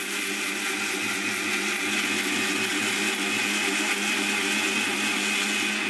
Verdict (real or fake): real